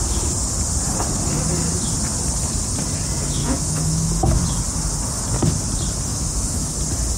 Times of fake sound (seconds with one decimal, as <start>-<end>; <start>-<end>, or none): 3.4-4.4; 6.1-6.7